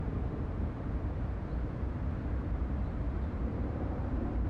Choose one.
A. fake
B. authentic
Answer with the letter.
A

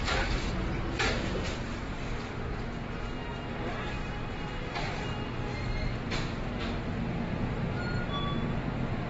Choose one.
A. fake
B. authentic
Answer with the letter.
B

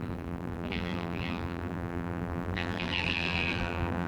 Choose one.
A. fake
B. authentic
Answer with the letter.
A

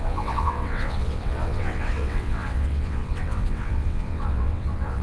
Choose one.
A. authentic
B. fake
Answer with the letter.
B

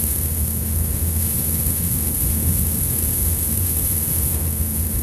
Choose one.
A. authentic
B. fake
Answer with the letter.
B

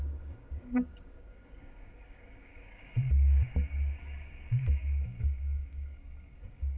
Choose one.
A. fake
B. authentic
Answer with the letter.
A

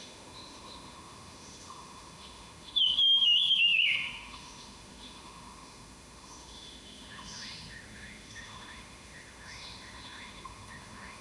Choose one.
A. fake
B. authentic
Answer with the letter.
A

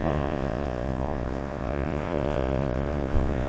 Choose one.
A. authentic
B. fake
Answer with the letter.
B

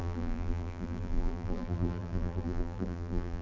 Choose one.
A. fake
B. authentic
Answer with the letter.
A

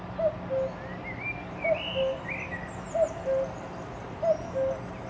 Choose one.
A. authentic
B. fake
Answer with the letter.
A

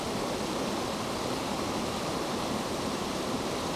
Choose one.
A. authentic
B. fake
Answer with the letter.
A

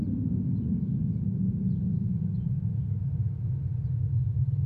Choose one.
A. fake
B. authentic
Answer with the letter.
B